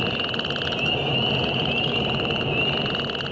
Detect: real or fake real